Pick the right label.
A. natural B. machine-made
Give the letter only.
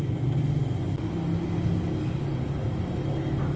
A